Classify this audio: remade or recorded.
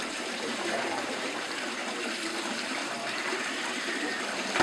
remade